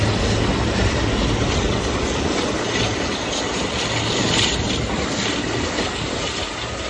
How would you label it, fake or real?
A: real